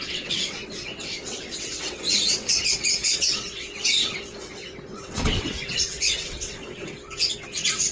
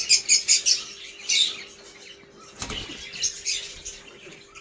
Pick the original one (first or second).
second